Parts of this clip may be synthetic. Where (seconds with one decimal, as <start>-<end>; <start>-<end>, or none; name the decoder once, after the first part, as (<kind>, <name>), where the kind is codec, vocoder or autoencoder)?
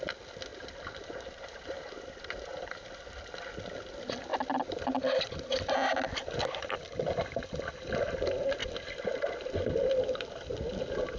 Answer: 0.5-3.3 (vocoder, BigVGAN v2)